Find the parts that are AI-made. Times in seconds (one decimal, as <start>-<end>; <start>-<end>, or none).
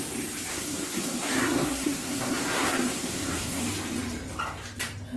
0.5-3.6